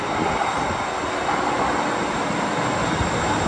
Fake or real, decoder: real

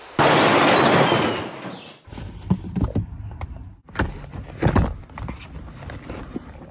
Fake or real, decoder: real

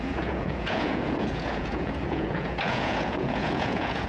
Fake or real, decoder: fake, vocoder, Vocos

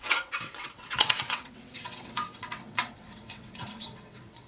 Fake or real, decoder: fake, vocoder, WaveNeXt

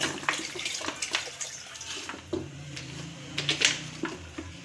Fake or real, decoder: real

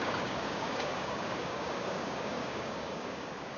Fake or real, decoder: fake, codec, DAC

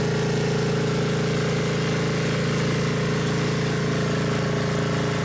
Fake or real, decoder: real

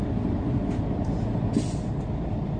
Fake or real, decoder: real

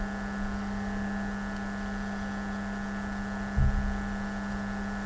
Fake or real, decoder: real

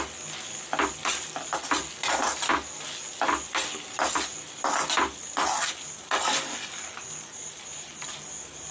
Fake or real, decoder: real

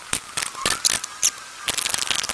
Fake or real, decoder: real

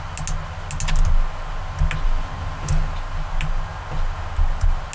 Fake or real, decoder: real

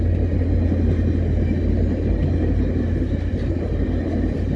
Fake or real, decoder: real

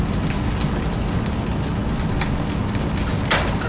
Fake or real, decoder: real